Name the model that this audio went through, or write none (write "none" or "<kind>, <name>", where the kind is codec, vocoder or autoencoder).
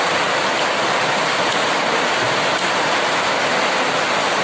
none